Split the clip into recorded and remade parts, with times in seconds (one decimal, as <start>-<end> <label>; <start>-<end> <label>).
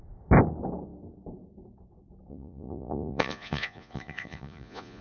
0.0-2.3 recorded; 2.3-5.0 remade